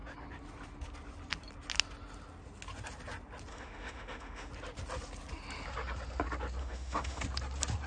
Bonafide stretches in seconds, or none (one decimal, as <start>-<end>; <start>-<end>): 0.0-3.5; 4.5-6.6; 7.2-7.9

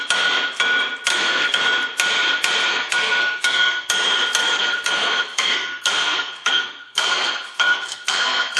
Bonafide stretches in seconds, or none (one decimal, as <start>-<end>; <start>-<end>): 0.0-1.1; 1.6-2.7; 3.9-4.4

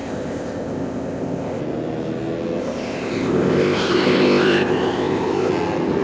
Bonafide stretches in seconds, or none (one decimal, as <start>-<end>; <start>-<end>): 1.6-2.6; 5.5-6.0